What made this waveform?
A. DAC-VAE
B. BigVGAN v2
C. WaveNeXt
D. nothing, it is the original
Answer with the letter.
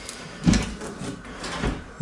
D